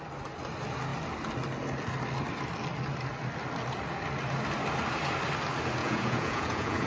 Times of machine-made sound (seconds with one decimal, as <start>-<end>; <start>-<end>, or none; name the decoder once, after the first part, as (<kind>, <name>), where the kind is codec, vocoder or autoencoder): 5.8-6.9 (vocoder, Vocos)